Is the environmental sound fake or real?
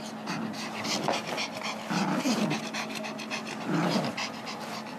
real